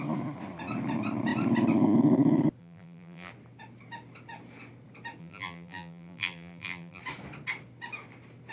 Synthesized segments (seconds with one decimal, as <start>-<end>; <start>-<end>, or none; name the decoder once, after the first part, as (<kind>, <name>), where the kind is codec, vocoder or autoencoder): 2.6-3.3 (vocoder, BigVGAN v2); 5.2-7.0